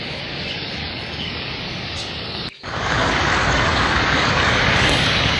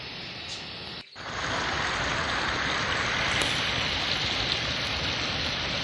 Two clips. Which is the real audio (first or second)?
second